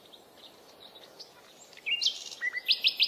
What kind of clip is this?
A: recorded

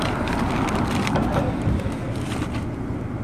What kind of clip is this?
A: recorded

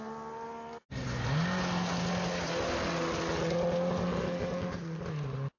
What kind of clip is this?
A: recorded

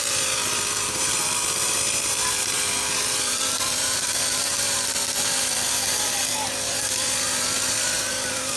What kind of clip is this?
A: remade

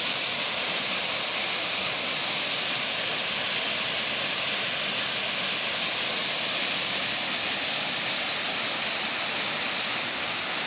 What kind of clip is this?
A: recorded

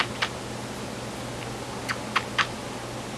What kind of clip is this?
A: recorded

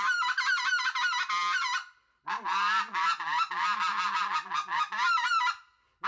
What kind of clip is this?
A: recorded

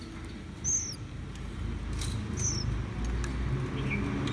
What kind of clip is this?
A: recorded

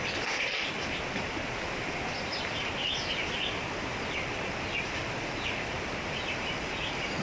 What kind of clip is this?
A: remade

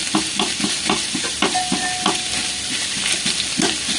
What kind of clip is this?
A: recorded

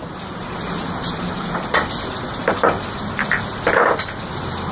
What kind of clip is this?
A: recorded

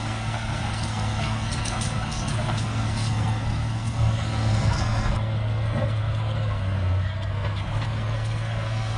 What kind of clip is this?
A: remade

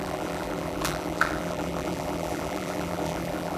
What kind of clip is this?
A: remade